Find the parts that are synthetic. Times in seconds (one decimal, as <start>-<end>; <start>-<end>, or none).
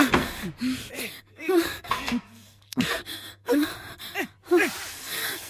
0.0-0.4; 1.2-3.7; 4.9-5.5